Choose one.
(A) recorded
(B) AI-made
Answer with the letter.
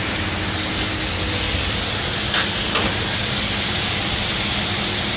A